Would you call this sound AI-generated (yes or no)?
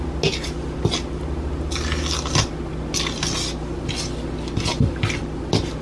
no